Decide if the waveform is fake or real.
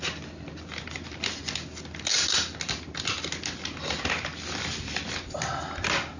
real